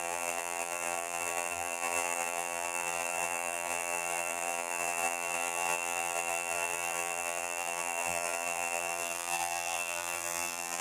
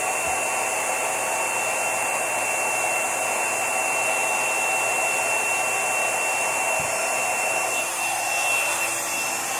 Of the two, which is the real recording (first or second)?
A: second